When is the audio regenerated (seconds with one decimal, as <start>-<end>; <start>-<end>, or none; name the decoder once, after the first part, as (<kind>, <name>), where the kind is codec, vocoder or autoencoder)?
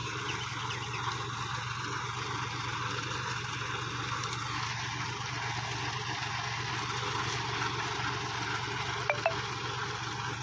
none